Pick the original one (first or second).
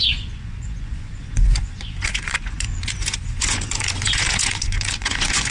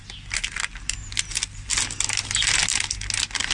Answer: second